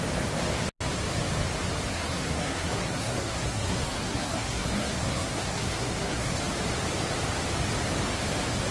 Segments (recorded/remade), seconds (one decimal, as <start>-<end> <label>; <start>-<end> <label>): 0.0-1.9 recorded; 1.9-6.4 remade; 6.4-8.7 recorded